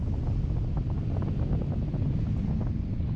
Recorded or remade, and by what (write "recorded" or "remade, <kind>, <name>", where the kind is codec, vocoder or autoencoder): recorded